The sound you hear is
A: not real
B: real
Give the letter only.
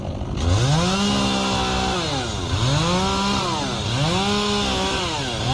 B